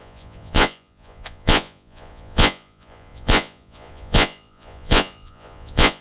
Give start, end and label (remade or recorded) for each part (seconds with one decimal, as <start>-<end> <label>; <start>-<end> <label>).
0.0-6.0 remade